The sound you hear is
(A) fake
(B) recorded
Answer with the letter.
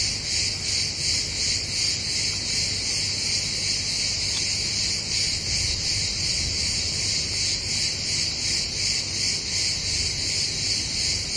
B